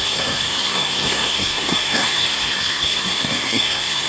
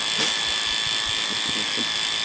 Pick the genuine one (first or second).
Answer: second